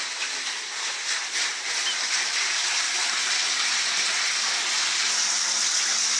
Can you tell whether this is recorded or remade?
recorded